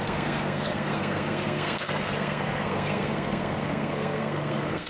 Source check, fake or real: fake